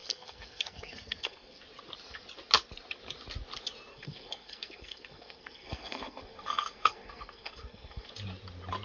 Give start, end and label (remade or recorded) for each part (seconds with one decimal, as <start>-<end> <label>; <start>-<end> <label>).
0.0-1.6 remade; 1.6-3.9 recorded; 3.9-8.1 remade; 8.1-8.8 recorded